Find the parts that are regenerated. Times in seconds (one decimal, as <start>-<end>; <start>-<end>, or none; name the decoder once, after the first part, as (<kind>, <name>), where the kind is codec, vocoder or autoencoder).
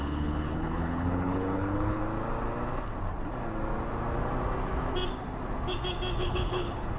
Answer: 0.0-2.0 (codec, HILCodec); 6.2-7.0